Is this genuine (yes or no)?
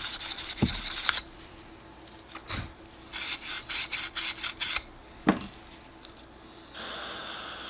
yes